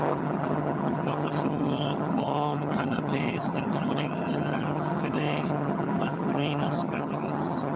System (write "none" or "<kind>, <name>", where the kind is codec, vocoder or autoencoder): vocoder, HiFi-GAN